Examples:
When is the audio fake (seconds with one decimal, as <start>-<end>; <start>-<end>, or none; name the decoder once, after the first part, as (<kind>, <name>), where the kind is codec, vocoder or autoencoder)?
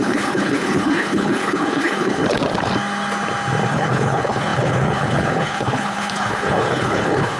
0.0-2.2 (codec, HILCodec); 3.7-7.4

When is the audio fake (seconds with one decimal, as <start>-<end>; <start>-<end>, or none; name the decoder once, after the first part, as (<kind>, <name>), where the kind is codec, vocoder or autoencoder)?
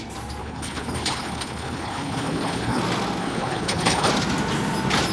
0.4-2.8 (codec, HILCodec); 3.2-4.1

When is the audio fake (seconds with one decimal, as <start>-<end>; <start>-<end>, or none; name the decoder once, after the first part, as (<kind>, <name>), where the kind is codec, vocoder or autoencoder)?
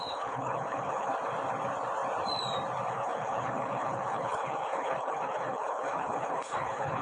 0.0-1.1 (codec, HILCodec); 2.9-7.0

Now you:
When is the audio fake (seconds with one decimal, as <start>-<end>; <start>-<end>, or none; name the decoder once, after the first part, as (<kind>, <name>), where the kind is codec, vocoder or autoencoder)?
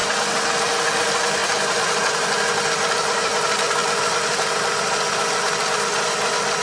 none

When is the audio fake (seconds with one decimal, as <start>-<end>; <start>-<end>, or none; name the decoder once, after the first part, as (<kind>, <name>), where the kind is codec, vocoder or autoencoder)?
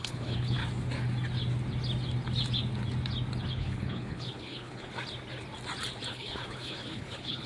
0.0-0.6 (codec, HILCodec); 3.5-4.9; 6.1-7.5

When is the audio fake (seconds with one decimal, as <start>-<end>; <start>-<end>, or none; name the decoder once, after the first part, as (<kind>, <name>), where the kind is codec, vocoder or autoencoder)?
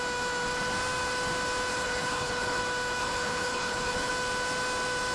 1.7-2.6 (codec, HILCodec); 3.0-4.1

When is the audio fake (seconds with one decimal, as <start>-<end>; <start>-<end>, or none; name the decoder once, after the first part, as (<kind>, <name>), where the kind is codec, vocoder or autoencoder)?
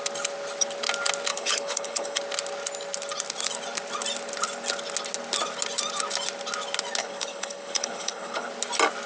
1.3-2.2 (codec, HILCodec); 7.0-8.5